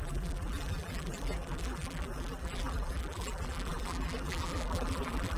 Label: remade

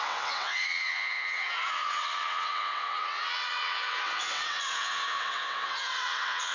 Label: remade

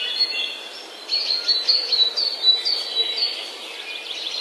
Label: recorded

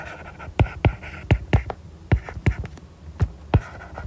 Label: recorded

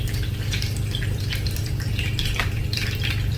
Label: remade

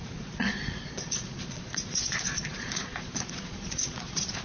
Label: remade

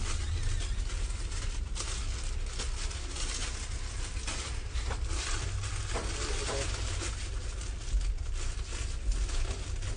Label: recorded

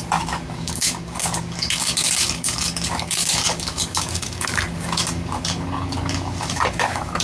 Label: remade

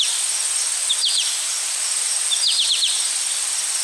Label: recorded